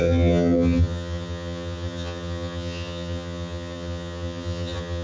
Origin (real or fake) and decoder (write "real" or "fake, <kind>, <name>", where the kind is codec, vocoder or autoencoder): fake, vocoder, HiFi-GAN